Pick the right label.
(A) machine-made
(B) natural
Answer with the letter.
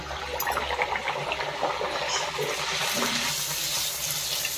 B